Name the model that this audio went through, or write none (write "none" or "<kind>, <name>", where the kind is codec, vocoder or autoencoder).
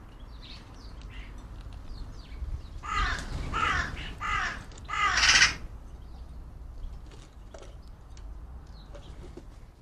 none